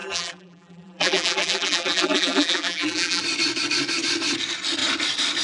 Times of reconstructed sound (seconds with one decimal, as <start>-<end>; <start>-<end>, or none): 0.0-3.2